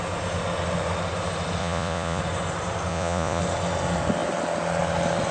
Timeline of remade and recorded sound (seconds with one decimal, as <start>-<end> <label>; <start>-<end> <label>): 0.0-1.6 recorded; 1.6-2.2 remade; 2.2-2.9 recorded; 2.9-3.4 remade; 3.4-5.3 recorded